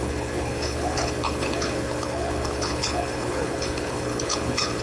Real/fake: fake